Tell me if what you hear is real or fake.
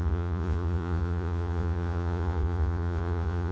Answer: fake